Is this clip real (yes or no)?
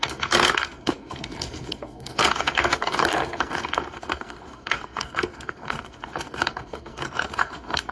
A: no